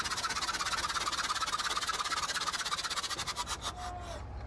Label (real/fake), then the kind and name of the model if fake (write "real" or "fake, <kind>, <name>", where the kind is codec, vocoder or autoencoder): real